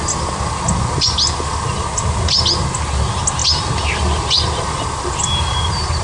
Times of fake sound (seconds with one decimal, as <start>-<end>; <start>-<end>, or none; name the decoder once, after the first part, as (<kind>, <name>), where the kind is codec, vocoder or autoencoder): 3.4-4.3 (vocoder, BigVGAN v2)